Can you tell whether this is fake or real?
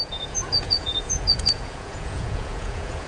fake